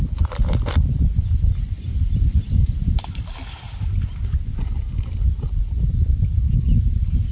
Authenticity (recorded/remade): recorded